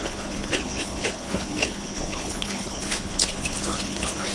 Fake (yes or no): yes